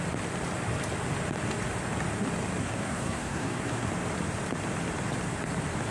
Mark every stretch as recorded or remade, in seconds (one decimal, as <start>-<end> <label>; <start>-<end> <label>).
0.0-2.6 recorded; 2.6-3.9 remade; 3.9-5.9 recorded